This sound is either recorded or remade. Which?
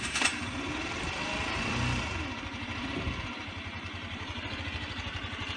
recorded